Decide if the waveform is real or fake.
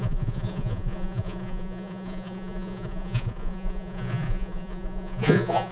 fake